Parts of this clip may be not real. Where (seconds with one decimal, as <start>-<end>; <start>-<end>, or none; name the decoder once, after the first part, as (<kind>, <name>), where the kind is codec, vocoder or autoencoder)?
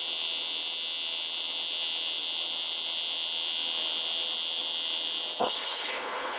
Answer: 5.4-6.4 (codec, HILCodec)